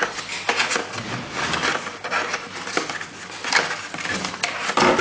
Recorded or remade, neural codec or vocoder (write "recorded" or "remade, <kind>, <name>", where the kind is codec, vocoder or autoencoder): recorded